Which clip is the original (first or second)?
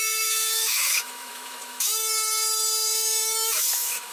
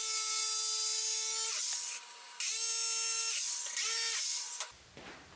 second